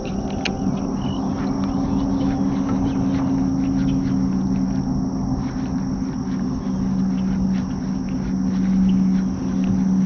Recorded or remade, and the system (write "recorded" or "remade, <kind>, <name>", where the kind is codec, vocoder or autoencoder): recorded